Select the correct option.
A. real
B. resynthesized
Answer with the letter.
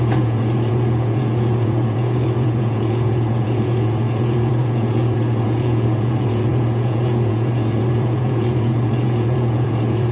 B